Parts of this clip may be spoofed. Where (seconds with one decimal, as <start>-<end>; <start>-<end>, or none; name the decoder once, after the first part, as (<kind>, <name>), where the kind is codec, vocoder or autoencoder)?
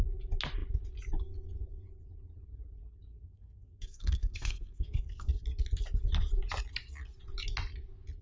3.1-5.3 (codec, SNAC)